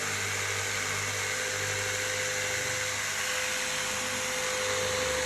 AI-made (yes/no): no